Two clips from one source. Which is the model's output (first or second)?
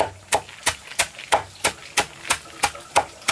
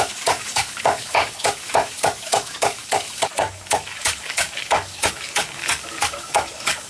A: second